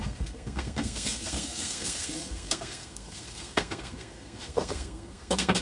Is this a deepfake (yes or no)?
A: yes